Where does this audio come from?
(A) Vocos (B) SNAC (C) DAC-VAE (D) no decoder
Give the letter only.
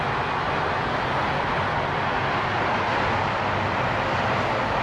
D